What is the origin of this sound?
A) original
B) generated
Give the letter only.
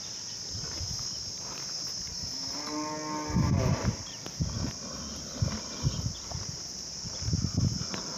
A